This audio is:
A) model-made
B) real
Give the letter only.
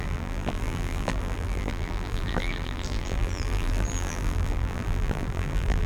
A